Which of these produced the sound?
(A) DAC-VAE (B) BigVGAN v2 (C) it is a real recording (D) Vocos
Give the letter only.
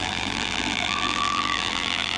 B